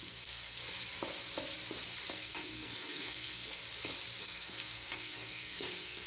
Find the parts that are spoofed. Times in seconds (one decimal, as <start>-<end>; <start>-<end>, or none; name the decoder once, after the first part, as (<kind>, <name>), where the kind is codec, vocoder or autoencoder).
0.0-0.6 (codec, SNAC); 2.1-3.6; 4.2-6.1